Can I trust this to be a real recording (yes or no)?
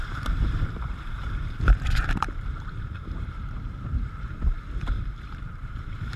no